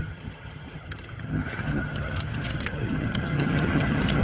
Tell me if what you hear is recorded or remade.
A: remade